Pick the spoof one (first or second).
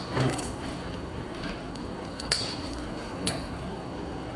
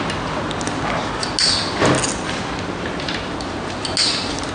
first